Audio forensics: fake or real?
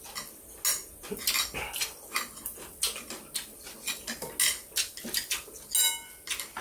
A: real